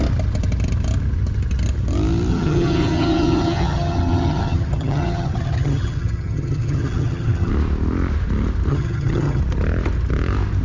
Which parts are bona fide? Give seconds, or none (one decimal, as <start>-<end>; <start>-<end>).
0.0-2.3; 7.5-8.7; 9.4-10.6